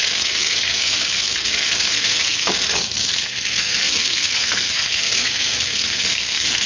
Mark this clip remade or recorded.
remade